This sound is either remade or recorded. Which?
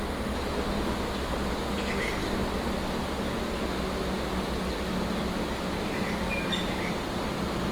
recorded